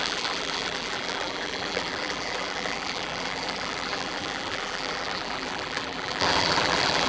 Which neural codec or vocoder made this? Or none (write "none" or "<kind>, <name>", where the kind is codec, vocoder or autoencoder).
vocoder, BigVGAN v2